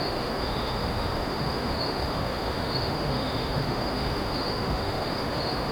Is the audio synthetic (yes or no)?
yes